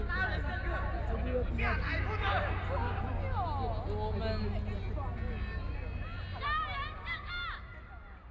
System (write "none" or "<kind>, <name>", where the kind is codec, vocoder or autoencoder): none